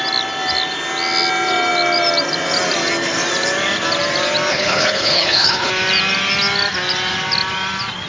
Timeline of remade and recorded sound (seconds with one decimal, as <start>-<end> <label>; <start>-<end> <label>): 0.0-4.5 recorded; 4.5-5.7 remade; 5.7-8.1 recorded